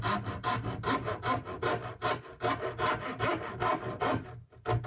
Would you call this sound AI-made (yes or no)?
no